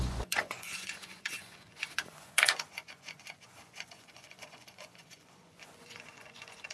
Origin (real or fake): fake